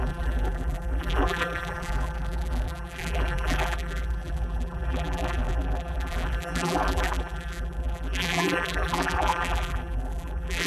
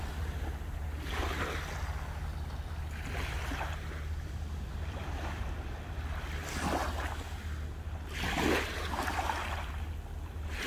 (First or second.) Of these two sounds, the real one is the second